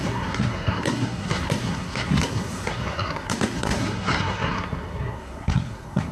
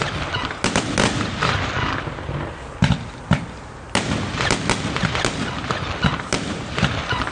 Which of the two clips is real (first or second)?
second